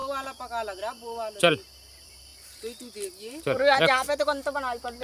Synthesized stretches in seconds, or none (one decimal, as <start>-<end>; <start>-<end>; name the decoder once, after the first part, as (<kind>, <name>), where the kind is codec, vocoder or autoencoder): 0.8-3.6 (vocoder, BigVGAN v2)